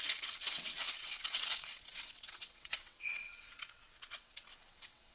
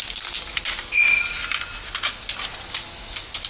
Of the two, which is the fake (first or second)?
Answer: first